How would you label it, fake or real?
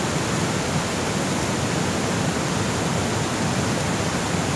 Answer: real